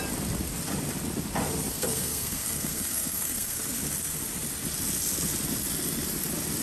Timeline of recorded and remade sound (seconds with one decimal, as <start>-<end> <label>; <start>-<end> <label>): 0.0-1.7 recorded; 1.7-3.6 remade; 3.6-6.6 recorded